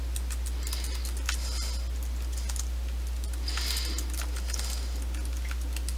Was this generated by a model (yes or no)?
no